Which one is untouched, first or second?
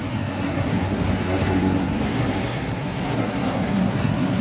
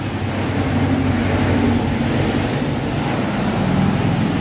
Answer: second